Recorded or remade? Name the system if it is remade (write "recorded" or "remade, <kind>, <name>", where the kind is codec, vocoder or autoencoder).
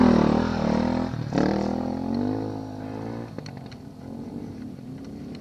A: recorded